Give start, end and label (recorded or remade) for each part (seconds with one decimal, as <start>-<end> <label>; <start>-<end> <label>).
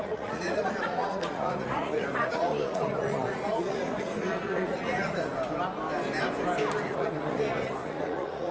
0.0-5.3 remade; 5.3-6.8 recorded; 6.8-8.5 remade